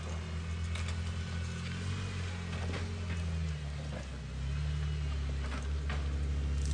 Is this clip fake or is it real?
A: real